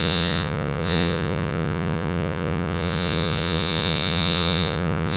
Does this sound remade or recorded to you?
remade